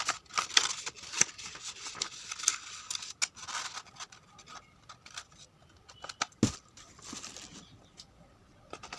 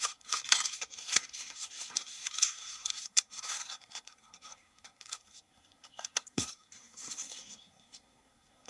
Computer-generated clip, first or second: second